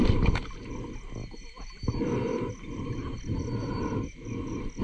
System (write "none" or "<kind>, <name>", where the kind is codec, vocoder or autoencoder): none